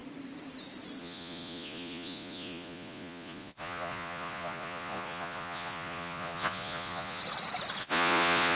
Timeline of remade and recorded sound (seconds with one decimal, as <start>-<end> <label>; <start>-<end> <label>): 0.0-1.0 recorded; 1.0-7.2 remade; 7.2-7.8 recorded; 7.8-8.6 remade